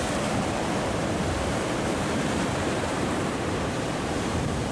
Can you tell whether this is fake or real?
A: fake